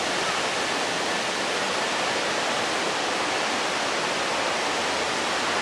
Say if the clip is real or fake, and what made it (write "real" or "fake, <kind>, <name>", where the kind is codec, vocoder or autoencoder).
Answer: real